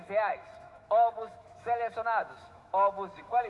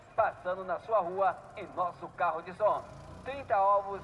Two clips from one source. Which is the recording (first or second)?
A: second